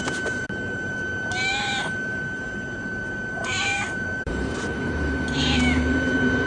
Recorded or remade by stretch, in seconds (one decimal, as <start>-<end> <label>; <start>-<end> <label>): 0.0-6.5 remade

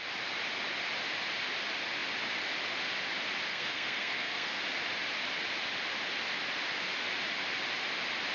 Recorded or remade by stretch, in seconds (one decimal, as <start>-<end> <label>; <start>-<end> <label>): 0.0-3.5 recorded; 3.5-4.6 remade; 4.6-8.3 recorded

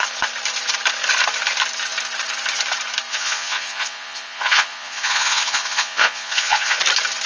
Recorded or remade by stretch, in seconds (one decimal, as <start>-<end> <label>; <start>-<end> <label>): 0.0-3.1 recorded; 3.1-6.8 remade; 6.8-7.3 recorded

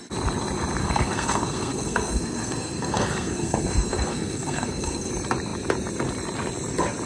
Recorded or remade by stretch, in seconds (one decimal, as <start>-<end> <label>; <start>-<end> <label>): 0.0-0.8 recorded; 0.8-5.1 remade; 5.1-7.1 recorded

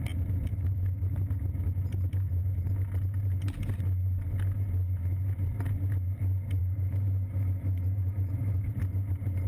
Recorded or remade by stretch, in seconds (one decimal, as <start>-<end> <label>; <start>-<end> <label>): 0.0-0.5 recorded; 0.5-1.1 remade; 1.1-6.6 recorded; 6.6-8.7 remade; 8.7-9.5 recorded

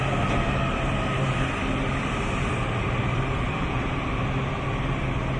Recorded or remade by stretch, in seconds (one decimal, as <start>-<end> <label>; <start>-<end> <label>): 0.0-3.1 recorded; 3.1-3.8 remade; 3.8-5.4 recorded

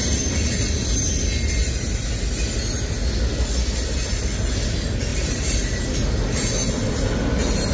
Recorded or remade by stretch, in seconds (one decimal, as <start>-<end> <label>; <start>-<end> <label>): 0.0-1.6 recorded; 1.6-2.1 remade; 2.1-5.1 recorded; 5.1-5.8 remade; 5.8-7.7 recorded

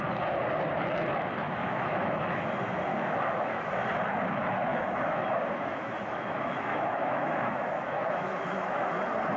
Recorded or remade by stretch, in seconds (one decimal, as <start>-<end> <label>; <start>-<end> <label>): 0.0-1.4 recorded; 1.4-2.5 remade; 2.5-2.9 recorded; 2.9-3.7 remade; 3.7-4.7 recorded; 4.7-9.0 remade; 9.0-9.4 recorded